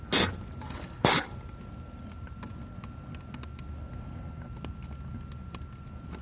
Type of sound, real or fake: real